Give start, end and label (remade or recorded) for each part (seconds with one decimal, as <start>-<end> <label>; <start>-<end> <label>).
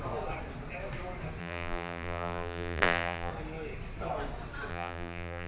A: 0.0-1.4 recorded; 1.4-3.3 remade; 3.3-4.7 recorded; 4.7-5.5 remade